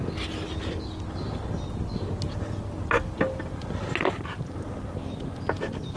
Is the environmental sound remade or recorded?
recorded